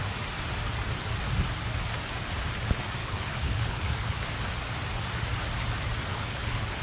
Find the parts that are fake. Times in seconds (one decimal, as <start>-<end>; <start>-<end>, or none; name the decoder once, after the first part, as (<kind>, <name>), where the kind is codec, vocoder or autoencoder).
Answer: 3.0-4.2 (codec, HILCodec); 6.1-6.8